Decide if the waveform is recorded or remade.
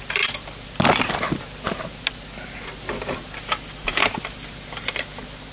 recorded